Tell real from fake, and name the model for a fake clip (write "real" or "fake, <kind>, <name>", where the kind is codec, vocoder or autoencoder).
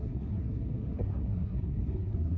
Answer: fake, codec, SNAC